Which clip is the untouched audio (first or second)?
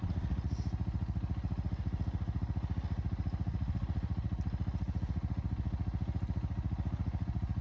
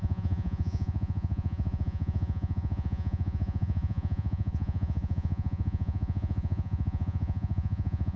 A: first